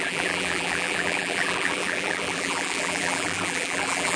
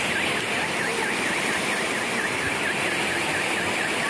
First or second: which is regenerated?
first